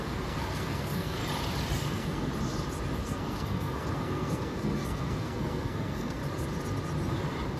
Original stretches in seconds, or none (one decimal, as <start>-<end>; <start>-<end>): 1.2-1.9; 2.3-3.0; 6.2-7.6